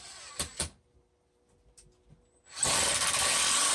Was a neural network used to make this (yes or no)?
no